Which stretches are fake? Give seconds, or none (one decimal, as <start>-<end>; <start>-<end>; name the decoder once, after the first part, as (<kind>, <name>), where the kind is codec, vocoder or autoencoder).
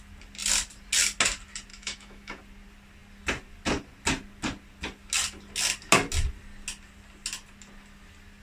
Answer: 1.7-2.4 (autoencoder, DAC-VAE)